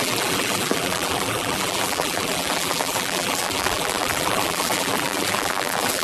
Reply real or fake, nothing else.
fake